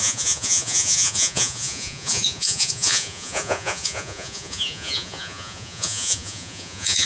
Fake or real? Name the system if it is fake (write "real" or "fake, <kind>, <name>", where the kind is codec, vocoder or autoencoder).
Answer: fake, vocoder, Vocos